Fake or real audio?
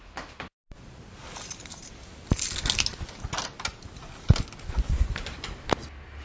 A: real